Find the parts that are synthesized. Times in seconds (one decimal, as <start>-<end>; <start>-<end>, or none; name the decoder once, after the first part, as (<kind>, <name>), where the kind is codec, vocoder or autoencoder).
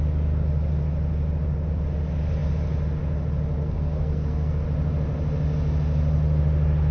3.6-4.6 (codec, SNAC)